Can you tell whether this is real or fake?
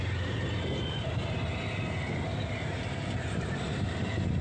real